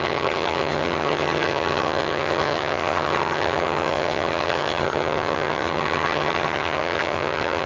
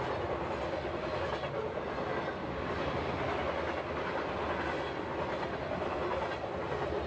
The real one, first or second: second